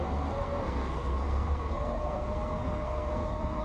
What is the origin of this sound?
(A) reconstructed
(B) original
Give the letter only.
A